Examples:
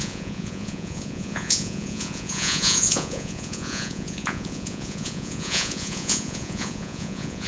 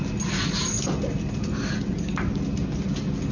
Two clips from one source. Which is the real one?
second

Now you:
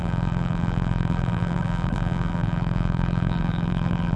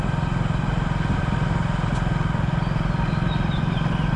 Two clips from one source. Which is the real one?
second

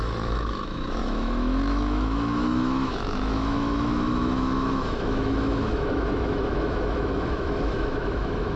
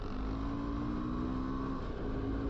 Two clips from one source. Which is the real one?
second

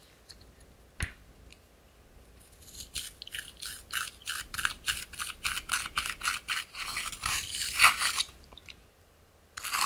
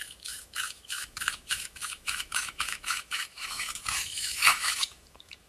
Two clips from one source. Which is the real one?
first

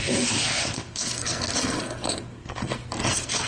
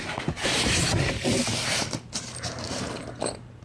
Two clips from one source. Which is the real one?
second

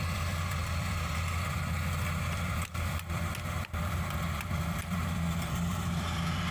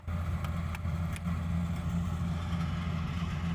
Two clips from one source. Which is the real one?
second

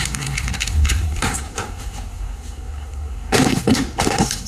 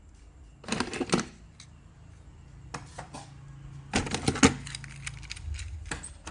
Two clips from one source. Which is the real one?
second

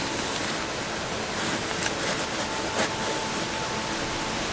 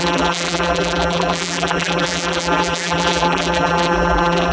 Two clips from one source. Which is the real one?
first